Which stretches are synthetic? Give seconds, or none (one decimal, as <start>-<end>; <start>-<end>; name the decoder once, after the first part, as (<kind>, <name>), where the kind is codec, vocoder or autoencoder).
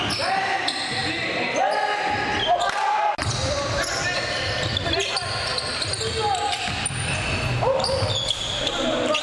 none